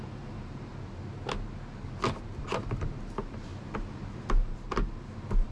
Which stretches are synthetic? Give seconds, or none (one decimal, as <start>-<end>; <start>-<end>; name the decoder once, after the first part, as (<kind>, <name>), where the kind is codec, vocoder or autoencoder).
0.0-0.7 (vocoder, BigVGAN v2); 2.4-3.5; 4.1-5.5